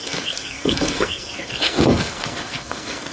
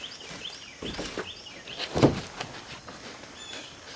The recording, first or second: second